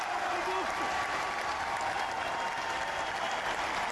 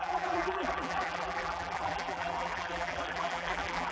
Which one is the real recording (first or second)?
first